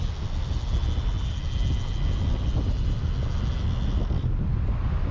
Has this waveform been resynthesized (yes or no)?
no